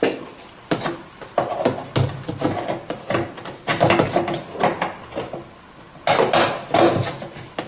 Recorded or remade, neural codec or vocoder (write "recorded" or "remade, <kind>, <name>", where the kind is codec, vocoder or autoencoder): recorded